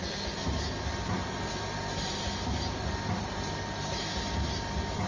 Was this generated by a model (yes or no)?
no